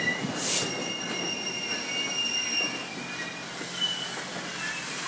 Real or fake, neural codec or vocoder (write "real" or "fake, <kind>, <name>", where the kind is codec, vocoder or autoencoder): real